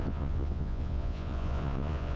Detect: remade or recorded remade